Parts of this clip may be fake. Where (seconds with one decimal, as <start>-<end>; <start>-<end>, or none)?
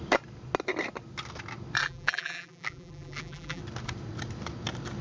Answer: 1.8-3.6